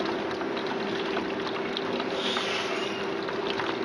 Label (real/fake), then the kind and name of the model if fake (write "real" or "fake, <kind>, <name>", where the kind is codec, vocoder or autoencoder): real